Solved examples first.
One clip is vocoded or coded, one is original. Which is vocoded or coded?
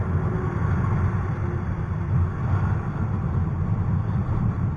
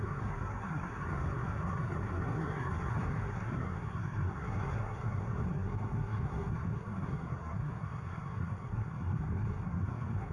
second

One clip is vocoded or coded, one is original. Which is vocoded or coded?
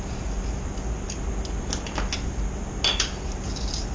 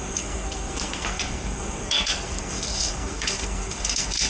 second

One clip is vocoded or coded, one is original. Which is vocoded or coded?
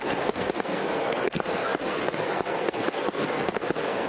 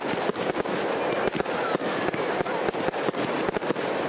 first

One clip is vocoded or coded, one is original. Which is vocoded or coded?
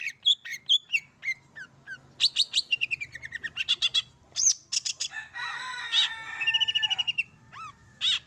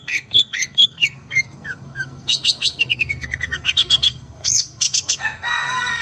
second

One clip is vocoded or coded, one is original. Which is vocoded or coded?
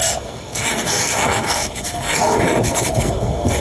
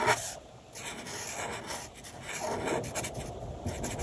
first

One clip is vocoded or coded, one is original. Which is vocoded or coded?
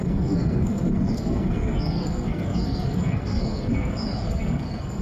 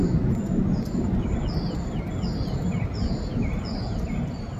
first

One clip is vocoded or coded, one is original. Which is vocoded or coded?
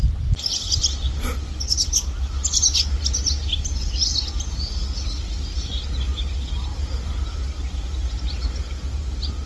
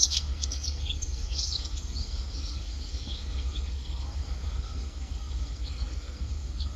second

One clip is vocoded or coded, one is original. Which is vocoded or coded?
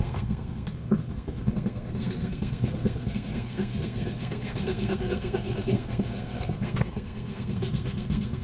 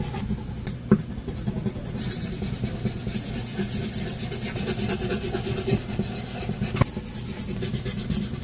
first